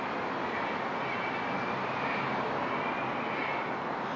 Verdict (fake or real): real